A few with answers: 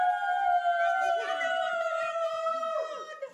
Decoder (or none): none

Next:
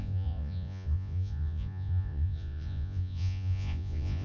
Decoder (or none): vocoder, Vocos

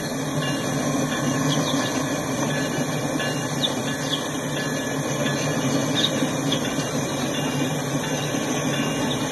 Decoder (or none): none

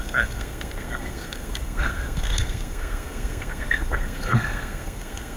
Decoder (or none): codec, SNAC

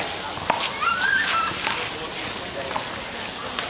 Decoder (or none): none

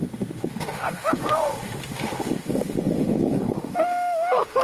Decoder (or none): autoencoder, DAC-VAE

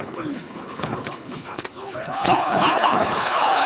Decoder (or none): codec, HILCodec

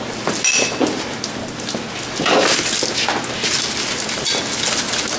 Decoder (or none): none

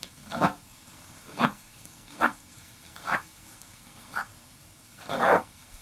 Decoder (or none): codec, SNAC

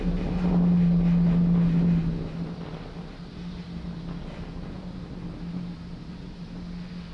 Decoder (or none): none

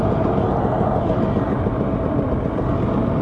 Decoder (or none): none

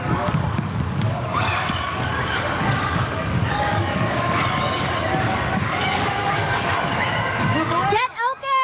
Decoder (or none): codec, DAC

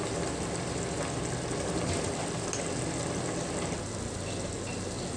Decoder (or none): none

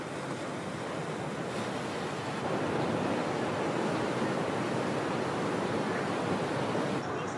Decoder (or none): none